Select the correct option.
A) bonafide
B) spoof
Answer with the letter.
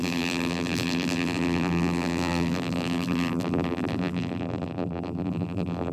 B